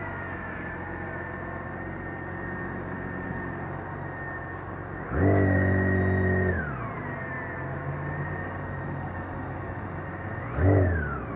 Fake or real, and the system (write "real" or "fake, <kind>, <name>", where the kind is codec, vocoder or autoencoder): real